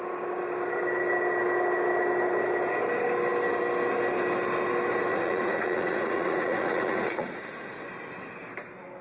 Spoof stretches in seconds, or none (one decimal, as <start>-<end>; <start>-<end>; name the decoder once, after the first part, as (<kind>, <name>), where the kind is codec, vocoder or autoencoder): 5.1-7.8 (vocoder, Vocos)